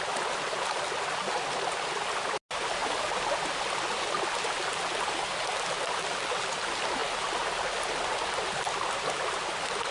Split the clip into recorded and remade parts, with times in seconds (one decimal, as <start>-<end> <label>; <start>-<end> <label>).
0.0-2.8 recorded; 2.8-3.6 remade; 3.6-9.9 recorded